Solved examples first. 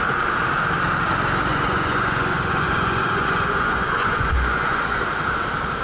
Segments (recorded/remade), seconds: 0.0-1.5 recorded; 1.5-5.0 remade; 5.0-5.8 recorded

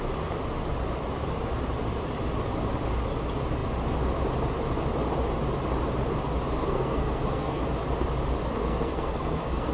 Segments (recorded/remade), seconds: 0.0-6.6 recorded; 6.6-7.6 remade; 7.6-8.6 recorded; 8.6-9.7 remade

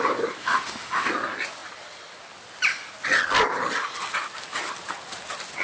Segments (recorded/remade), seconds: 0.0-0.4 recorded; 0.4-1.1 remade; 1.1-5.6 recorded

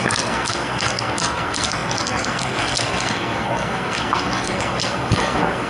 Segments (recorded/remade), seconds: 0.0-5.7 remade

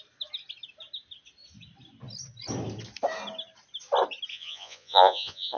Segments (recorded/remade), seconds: 0.0-4.3 recorded; 4.3-5.6 remade

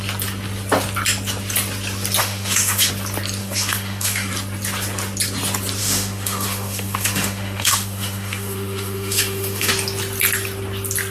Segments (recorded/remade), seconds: 0.0-2.2 recorded; 2.2-2.9 remade; 2.9-3.4 recorded; 3.4-4.3 remade; 4.3-5.8 recorded; 5.8-9.7 remade; 9.7-11.1 recorded